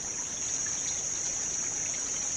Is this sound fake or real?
real